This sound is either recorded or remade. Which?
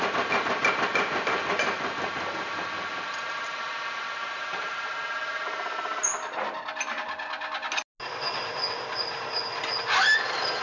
recorded